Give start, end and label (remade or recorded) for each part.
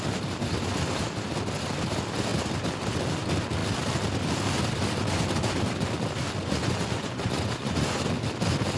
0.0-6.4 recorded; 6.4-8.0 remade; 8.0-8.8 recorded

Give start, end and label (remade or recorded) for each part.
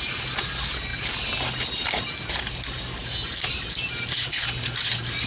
0.0-5.3 recorded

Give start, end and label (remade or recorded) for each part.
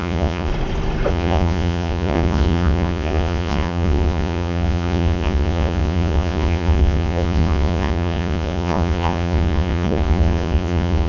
0.0-0.5 remade; 0.5-1.1 recorded; 1.1-11.1 remade